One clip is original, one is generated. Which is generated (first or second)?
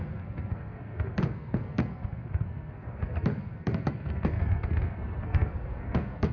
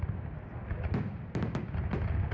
first